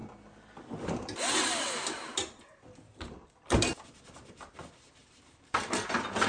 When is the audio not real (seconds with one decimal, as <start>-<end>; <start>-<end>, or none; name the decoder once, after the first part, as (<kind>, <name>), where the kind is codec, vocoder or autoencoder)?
none

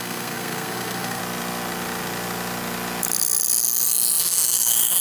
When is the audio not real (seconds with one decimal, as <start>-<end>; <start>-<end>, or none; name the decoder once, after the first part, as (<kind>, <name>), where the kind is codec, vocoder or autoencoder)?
0.0-1.2 (codec, SNAC); 4.2-5.0

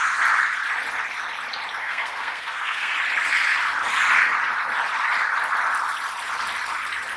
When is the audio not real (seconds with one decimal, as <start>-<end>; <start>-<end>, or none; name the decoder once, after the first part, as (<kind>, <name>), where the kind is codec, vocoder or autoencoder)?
1.8-2.9 (codec, SNAC)

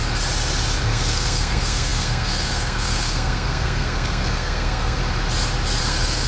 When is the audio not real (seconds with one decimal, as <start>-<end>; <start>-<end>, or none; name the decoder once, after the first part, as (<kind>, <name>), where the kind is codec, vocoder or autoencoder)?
0.8-5.0 (codec, SNAC); 5.8-6.3

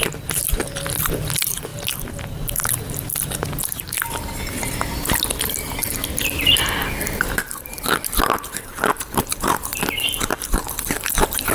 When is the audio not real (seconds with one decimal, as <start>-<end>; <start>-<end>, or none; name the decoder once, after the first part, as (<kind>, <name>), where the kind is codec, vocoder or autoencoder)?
none

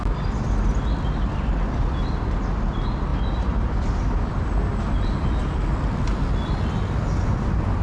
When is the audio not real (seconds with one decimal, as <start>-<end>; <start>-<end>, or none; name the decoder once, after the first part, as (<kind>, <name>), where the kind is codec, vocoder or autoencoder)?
none

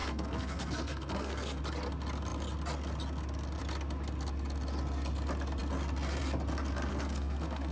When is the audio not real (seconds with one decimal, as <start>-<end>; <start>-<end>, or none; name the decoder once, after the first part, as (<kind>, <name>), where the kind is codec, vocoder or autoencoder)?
0.0-1.6 (codec, SNAC); 6.9-7.7

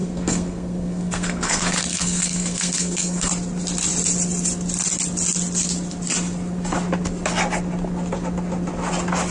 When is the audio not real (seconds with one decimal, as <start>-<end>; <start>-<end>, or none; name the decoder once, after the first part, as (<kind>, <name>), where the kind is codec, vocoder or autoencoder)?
0.0-3.3 (codec, SNAC)